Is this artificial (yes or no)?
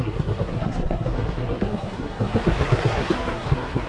yes